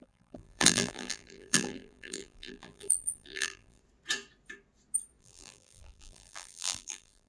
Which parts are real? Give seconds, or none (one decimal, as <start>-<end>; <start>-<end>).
3.8-5.2